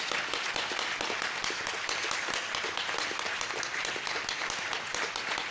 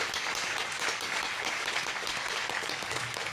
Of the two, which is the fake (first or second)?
second